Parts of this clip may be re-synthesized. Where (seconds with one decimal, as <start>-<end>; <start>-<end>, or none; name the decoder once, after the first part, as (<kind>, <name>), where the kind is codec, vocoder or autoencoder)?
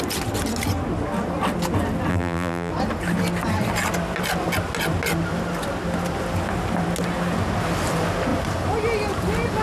2.1-2.7 (vocoder, BigVGAN v2)